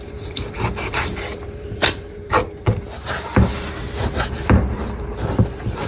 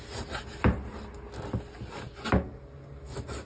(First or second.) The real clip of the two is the second